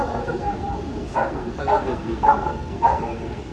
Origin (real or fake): fake